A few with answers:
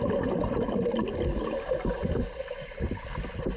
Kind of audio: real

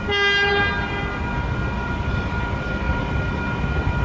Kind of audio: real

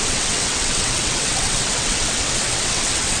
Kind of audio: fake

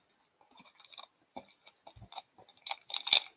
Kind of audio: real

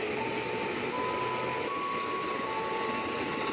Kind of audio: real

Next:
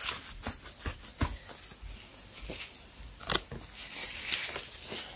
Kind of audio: real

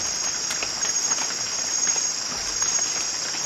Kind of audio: real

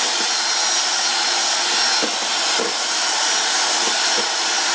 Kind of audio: real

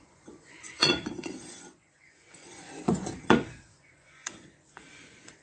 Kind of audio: fake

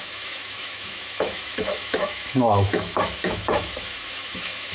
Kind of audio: fake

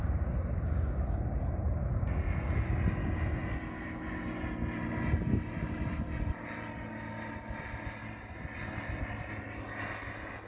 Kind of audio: real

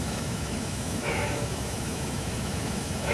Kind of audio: fake